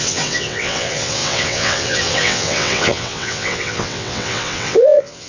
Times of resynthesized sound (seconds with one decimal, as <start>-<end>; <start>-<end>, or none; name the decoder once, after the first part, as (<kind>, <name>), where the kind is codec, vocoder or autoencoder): 0.0-5.3 (vocoder, WaveNeXt)